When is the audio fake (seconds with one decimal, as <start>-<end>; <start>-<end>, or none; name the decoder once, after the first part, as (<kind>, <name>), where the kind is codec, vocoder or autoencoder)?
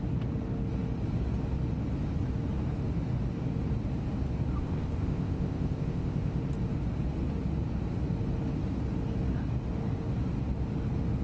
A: 4.6-6.4 (codec, ZipCodec)